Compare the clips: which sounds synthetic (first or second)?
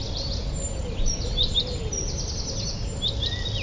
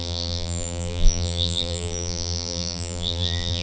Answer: second